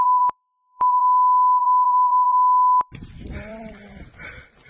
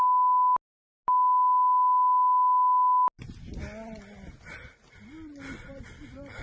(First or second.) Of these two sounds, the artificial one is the first